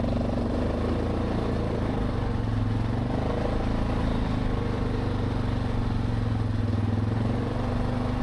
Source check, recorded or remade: recorded